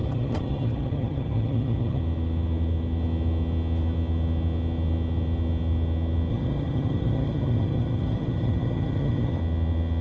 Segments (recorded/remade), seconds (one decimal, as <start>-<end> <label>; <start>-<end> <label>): 0.0-2.0 remade; 2.0-6.3 recorded; 6.3-9.4 remade; 9.4-10.0 recorded